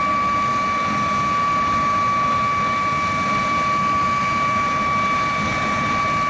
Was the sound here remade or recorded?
recorded